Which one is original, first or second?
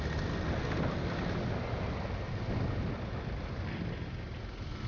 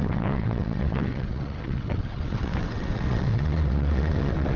first